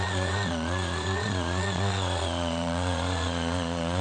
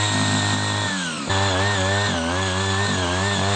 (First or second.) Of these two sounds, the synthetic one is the first